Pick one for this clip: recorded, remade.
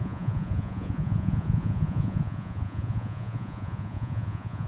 remade